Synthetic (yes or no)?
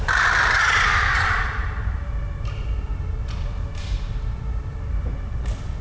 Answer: no